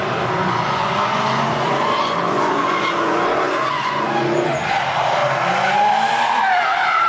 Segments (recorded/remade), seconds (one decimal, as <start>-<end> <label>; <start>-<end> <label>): 0.0-0.4 recorded; 0.4-4.6 remade; 4.6-7.1 recorded